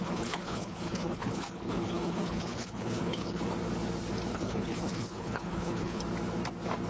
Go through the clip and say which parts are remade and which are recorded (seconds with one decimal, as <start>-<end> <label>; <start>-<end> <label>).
0.0-3.4 remade; 3.4-4.3 recorded; 4.3-6.0 remade; 6.0-6.9 recorded